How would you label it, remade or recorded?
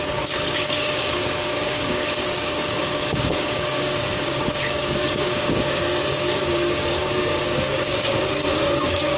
remade